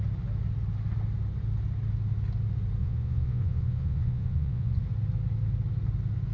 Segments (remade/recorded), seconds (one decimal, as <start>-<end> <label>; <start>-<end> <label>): 0.0-2.8 recorded; 2.8-4.8 remade; 4.8-6.3 recorded